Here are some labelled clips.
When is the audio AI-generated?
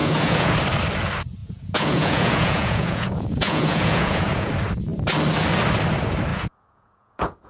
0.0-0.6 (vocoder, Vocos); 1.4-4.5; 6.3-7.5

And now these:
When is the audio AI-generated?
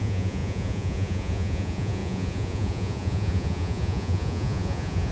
0.0-5.1 (vocoder, Vocos)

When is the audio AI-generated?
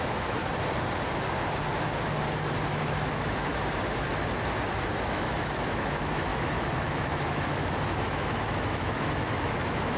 0.0-0.4 (autoencoder, DAC-VAE); 2.8-3.5; 5.1-10.0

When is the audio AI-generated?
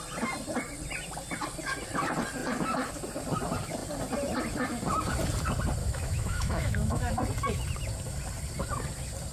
5.8-7.1 (autoencoder, DAC-VAE)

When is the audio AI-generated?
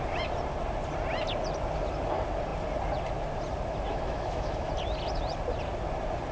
3.9-4.7 (autoencoder, DAC-VAE)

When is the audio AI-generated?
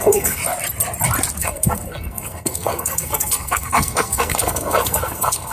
0.0-0.4 (codec, SNAC); 1.4-5.5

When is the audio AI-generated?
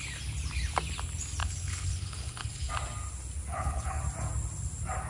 1.4-2.7 (codec, HILCodec); 3.5-4.0